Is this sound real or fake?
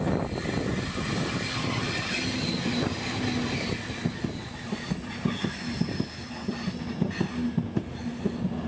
real